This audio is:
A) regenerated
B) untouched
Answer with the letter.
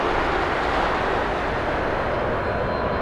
B